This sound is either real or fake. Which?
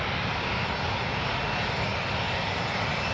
real